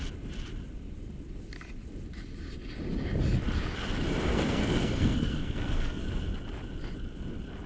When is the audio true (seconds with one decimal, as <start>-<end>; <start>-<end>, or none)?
0.0-4.3; 6.0-7.7